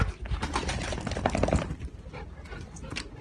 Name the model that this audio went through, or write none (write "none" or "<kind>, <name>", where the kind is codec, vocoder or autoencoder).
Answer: none